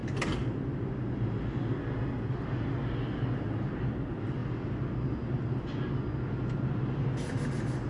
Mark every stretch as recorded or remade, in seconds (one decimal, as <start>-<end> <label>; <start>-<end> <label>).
0.0-7.9 recorded